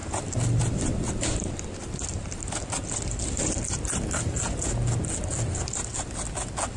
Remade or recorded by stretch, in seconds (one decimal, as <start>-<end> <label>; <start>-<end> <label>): 0.0-3.2 remade; 3.2-6.8 recorded